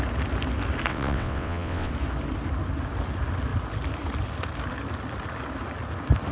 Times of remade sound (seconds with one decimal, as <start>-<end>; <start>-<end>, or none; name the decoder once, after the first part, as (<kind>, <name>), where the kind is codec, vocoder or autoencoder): 0.9-1.9 (vocoder, WaveNeXt)